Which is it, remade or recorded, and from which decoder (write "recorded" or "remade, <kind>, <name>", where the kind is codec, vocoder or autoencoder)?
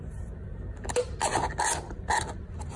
recorded